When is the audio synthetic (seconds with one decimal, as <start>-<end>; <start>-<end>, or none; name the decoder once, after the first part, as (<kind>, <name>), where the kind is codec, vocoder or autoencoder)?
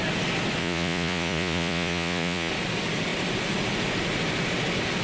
0.6-2.5 (vocoder, Vocos)